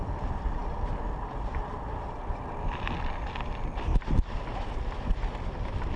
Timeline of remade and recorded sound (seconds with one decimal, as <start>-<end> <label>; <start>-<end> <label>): 0.0-6.0 recorded